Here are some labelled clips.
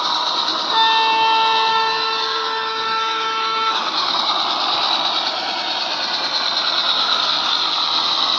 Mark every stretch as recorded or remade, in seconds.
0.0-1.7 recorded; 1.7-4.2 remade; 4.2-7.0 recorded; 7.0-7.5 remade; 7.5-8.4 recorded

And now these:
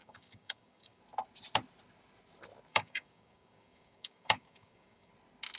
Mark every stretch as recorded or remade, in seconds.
0.0-1.0 remade; 1.0-2.7 recorded; 2.7-5.1 remade; 5.1-5.6 recorded

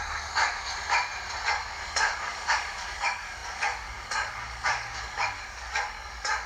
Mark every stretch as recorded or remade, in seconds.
0.0-0.7 remade; 0.7-1.5 recorded; 1.5-6.5 remade